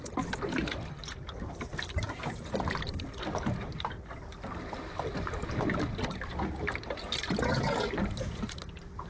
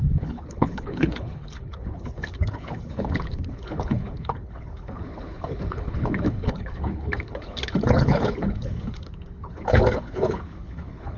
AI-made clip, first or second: second